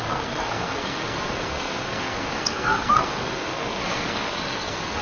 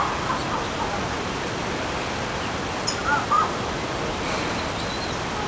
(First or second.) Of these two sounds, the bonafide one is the second